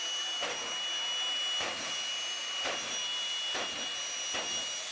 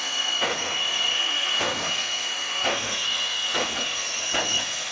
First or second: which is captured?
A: first